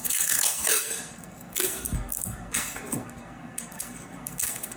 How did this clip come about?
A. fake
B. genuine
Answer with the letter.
A